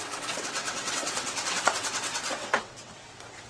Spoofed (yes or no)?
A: yes